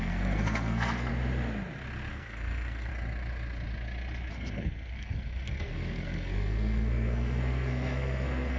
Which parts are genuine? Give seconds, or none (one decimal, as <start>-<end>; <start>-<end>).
1.1-2.1; 2.9-4.3